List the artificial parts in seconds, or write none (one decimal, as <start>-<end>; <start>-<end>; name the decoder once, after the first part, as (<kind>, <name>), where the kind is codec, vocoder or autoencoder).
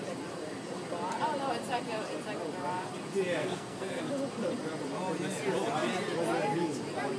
3.4-4.0 (codec, SNAC)